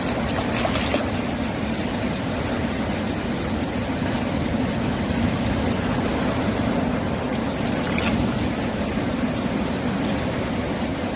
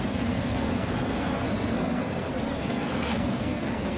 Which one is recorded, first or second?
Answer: first